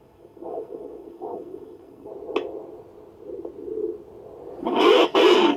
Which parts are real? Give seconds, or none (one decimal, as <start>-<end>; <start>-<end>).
2.1-4.6